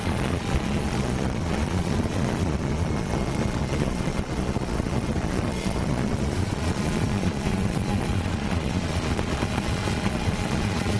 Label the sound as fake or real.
fake